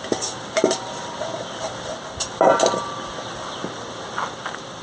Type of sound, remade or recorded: recorded